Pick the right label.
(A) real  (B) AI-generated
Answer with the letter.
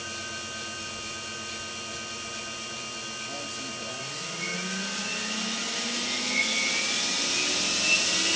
A